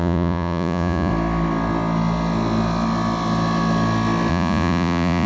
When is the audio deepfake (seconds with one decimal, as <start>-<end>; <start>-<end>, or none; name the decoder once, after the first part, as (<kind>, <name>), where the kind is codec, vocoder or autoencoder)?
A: 0.0-1.1 (vocoder, Vocos); 4.3-5.3